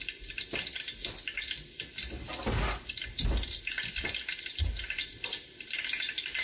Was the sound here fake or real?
real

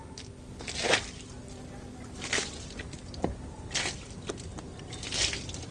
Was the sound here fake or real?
real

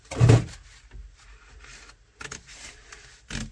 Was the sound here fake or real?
real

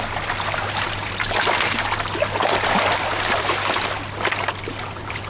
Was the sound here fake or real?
real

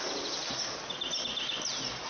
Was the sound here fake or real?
real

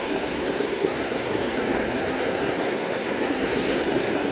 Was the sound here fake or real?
fake